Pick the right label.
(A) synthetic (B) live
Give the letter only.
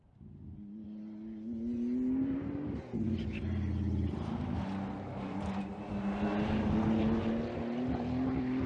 B